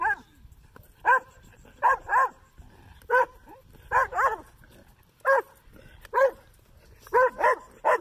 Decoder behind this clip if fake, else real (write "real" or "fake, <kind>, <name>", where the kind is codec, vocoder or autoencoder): real